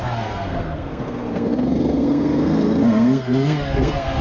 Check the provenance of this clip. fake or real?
fake